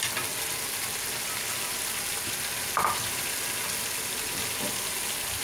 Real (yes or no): yes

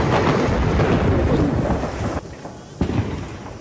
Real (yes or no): yes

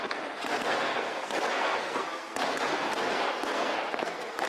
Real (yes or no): no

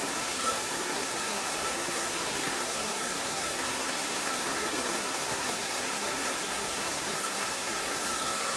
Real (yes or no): no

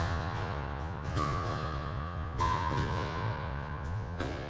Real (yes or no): no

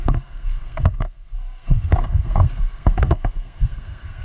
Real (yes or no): no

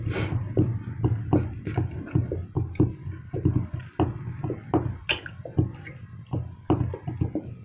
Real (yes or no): yes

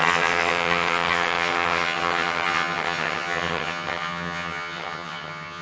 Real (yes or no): no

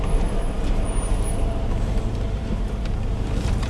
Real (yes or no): no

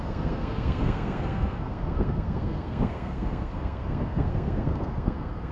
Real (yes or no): no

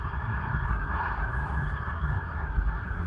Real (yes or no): no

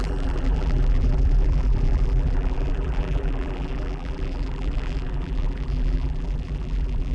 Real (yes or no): no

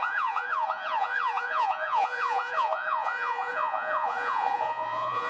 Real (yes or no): no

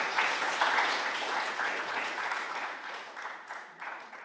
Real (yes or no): no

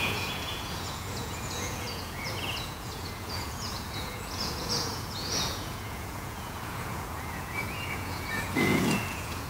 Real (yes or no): no